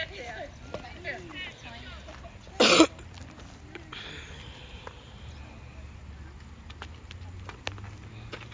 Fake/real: real